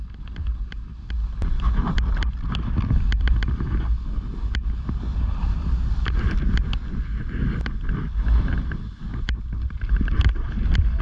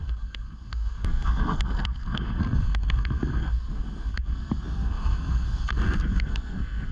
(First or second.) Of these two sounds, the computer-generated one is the second